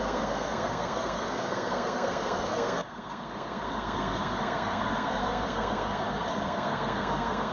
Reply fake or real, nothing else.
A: fake